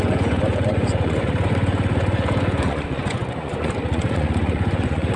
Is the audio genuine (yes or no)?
no